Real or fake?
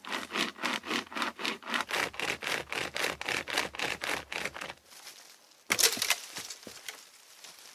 real